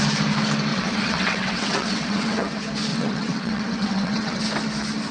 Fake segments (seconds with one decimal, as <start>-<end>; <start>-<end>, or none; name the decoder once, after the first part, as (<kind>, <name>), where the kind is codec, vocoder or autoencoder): 0.7-2.5 (vocoder, WaveNeXt); 2.9-4.4